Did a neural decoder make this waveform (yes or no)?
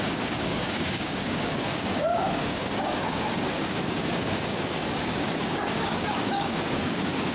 yes